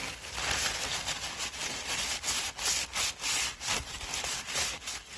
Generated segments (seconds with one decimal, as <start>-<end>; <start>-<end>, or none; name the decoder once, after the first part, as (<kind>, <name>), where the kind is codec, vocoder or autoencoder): none